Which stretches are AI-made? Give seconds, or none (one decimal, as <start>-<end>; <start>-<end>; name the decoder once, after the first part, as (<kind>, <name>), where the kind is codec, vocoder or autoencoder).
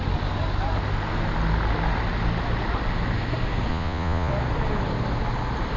3.7-4.3 (vocoder, Vocos)